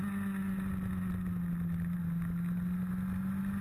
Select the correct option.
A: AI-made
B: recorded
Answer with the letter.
B